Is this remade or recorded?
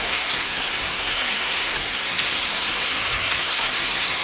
remade